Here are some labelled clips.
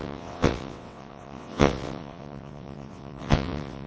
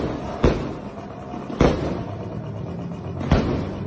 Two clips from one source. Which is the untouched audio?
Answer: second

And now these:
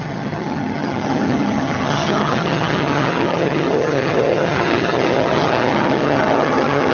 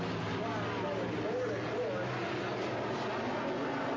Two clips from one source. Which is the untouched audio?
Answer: second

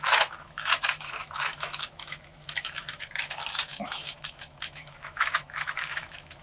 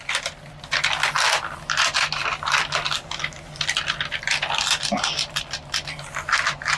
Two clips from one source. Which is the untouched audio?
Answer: second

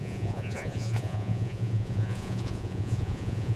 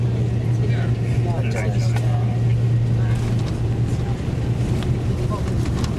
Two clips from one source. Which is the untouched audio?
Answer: second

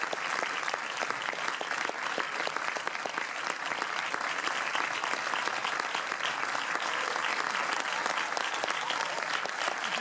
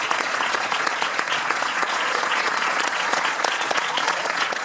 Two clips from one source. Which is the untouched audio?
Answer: first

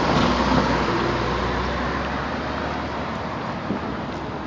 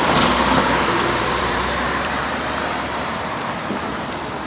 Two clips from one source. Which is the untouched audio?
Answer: first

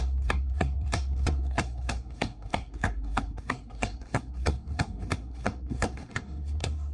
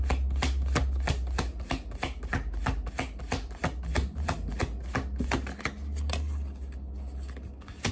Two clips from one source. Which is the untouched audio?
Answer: second